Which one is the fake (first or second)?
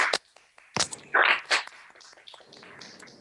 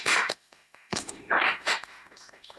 second